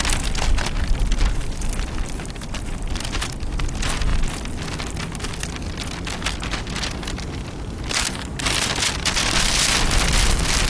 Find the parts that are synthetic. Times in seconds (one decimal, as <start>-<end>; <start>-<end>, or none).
none